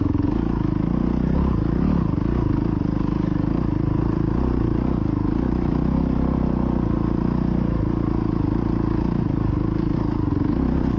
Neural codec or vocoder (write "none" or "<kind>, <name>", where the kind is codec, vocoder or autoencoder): none